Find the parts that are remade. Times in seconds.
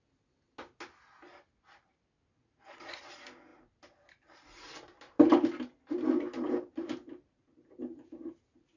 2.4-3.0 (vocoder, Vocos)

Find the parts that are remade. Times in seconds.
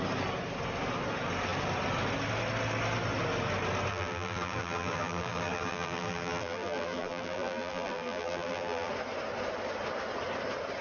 3.9-8.9 (vocoder, BigVGAN v2)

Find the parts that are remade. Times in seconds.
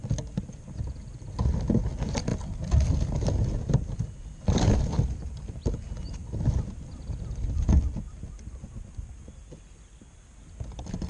none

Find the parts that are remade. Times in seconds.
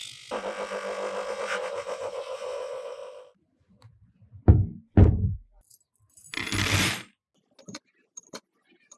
1.3-3.0 (vocoder, Vocos); 7.6-9.0